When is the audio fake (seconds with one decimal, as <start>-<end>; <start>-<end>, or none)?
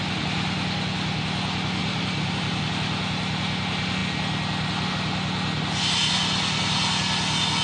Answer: 1.8-2.6